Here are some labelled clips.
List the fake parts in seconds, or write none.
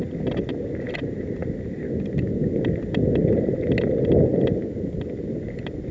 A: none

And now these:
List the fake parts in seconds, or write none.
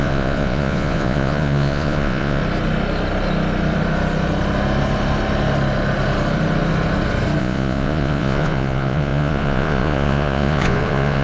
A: 0.0-2.4 (vocoder, Vocos); 7.4-11.2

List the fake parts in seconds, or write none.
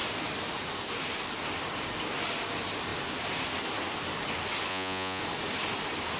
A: 4.7-5.2 (vocoder, Vocos)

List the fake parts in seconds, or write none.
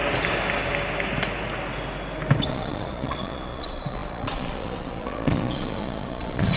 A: 2.5-6.6 (vocoder, Vocos)